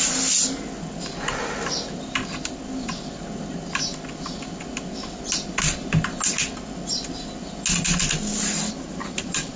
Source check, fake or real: real